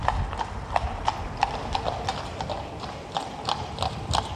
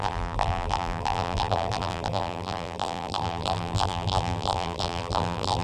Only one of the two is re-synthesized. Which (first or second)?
second